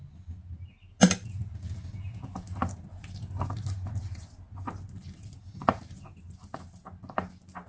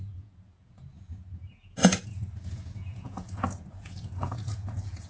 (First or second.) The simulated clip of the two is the second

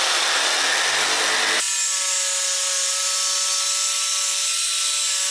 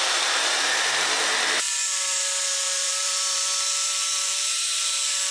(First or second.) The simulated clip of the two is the second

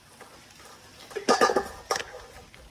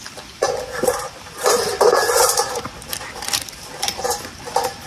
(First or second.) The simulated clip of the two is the second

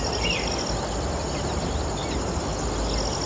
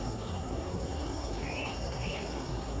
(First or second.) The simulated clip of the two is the second